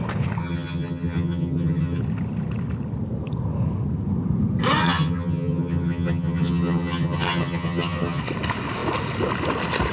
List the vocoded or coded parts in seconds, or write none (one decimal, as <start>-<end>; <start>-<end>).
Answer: 0.4-2.0; 4.8-8.2